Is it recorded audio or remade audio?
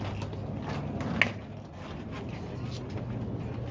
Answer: recorded